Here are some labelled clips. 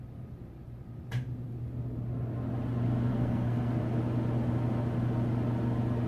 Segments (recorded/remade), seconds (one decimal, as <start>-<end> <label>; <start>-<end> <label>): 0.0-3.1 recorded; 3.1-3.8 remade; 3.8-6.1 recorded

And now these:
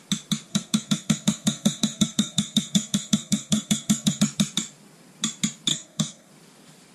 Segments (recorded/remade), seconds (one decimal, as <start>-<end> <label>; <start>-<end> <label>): 0.0-0.5 recorded; 0.5-4.2 remade; 4.2-5.7 recorded; 5.7-6.3 remade; 6.3-6.9 recorded

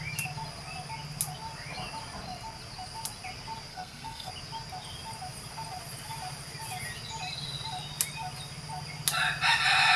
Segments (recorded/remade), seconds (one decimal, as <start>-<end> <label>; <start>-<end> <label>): 0.0-3.7 recorded; 3.7-4.3 remade; 4.3-10.0 recorded

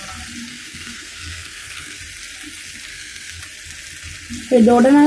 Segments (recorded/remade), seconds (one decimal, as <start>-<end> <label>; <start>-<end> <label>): 0.0-0.5 recorded; 0.5-2.0 remade; 2.0-2.9 recorded; 2.9-3.4 remade; 3.4-5.1 recorded

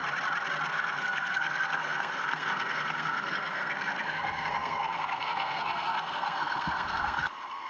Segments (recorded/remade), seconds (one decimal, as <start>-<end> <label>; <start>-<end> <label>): 0.0-0.7 recorded; 0.7-7.7 remade

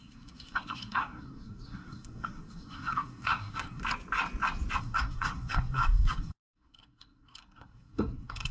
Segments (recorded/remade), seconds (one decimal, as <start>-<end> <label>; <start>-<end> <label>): 0.0-3.8 remade; 3.8-4.8 recorded; 4.8-8.5 remade